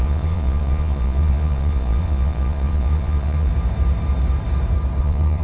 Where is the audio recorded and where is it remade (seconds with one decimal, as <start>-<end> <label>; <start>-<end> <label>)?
0.0-3.5 remade; 3.5-5.0 recorded; 5.0-5.4 remade